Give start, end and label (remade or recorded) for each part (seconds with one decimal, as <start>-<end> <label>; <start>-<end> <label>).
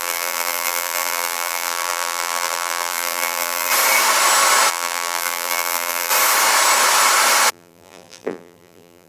0.0-3.7 remade; 3.7-4.7 recorded; 4.7-6.1 remade; 6.1-7.5 recorded; 7.5-9.1 remade